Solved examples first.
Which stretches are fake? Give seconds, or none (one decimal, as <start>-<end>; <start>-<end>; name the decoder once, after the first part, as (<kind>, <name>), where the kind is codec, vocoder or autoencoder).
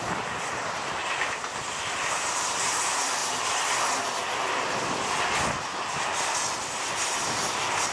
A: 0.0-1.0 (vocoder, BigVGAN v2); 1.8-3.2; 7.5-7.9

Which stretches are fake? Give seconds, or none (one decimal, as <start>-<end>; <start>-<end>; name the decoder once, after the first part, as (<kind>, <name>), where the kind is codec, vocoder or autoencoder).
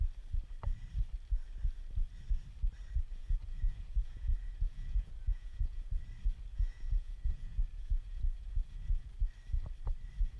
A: 3.2-5.9 (vocoder, Vocos); 6.5-9.1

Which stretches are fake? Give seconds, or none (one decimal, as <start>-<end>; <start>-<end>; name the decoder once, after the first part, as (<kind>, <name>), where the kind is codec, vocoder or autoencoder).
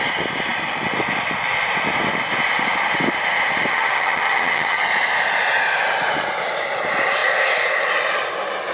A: 3.7-4.8 (vocoder, HiFi-GAN)